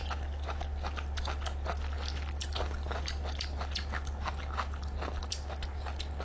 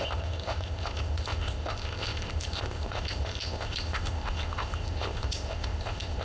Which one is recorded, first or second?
first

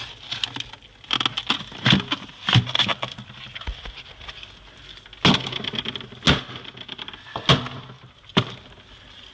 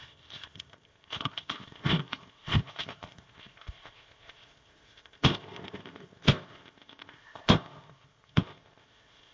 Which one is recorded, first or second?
first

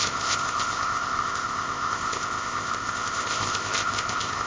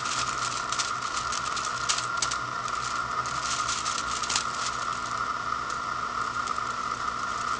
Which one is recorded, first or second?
second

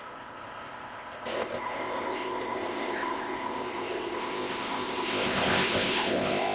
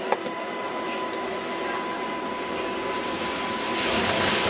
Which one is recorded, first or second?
second